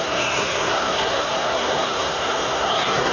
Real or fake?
fake